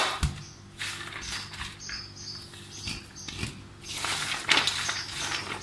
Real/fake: real